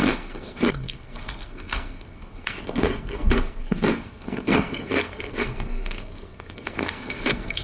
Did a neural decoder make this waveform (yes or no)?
yes